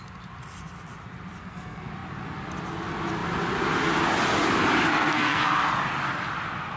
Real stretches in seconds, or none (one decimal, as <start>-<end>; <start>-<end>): 0.0-1.4; 1.9-4.9; 5.7-6.8